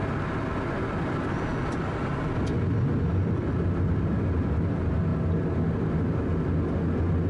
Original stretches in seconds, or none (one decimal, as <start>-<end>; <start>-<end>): 0.0-7.3